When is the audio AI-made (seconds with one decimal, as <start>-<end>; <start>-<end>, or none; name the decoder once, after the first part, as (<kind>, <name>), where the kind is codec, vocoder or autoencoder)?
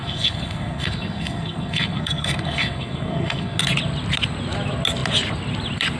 0.0-3.6 (codec, SNAC)